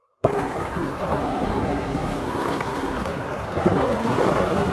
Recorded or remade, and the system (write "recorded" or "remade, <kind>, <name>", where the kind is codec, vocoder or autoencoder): remade, codec, SNAC